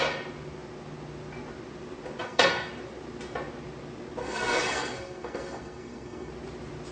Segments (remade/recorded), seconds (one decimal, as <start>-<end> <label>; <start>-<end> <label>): 0.0-2.2 recorded; 2.2-2.7 remade; 2.7-4.2 recorded; 4.2-6.3 remade; 6.3-6.9 recorded